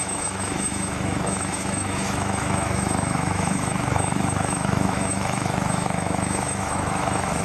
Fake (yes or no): yes